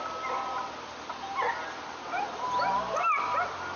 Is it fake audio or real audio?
real